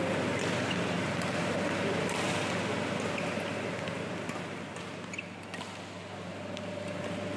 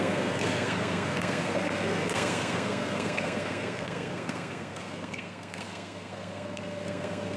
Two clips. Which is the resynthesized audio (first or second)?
second